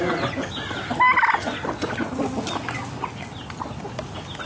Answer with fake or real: real